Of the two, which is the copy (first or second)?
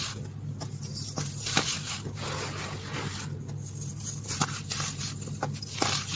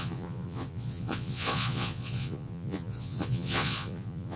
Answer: second